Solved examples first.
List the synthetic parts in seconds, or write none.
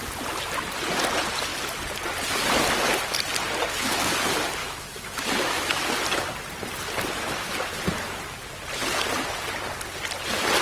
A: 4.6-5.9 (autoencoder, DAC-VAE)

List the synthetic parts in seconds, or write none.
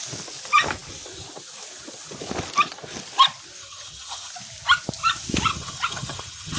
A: 3.6-4.3 (vocoder, HiFi-GAN); 5.5-6.6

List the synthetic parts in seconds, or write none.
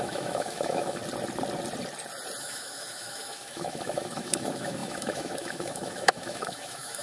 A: 0.0-1.0 (autoencoder, DAC-VAE); 2.4-7.0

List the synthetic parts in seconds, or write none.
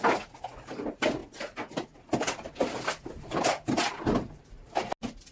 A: none